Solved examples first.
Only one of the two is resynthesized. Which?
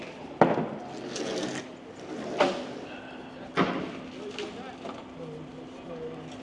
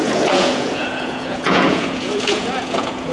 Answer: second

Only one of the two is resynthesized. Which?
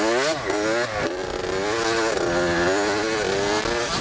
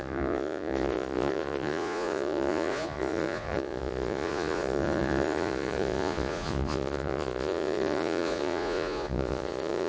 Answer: second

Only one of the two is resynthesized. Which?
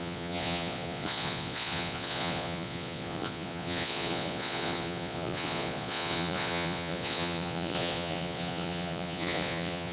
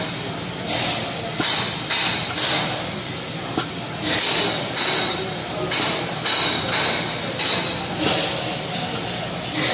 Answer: first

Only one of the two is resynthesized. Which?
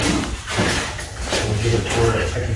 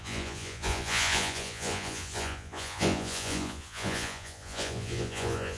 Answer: second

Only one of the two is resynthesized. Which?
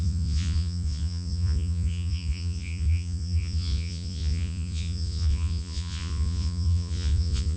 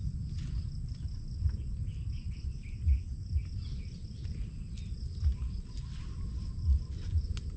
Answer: first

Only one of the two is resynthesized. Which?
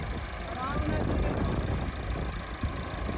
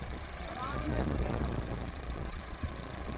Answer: second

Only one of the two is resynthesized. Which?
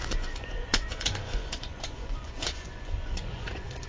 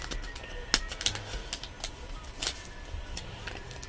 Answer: first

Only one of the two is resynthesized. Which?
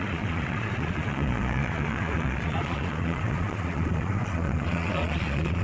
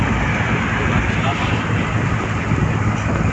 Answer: first